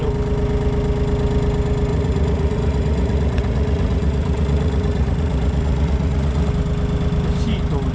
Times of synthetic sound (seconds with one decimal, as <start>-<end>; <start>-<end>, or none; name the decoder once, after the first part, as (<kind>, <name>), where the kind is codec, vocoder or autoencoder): 1.9-6.5 (vocoder, Vocos)